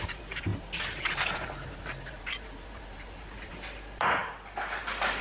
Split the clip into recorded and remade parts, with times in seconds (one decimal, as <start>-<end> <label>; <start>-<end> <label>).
0.0-0.5 remade; 0.5-2.9 recorded; 2.9-5.2 remade